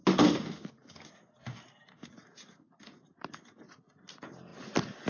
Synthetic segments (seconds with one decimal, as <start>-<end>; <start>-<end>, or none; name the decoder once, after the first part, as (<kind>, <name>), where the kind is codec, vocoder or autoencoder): none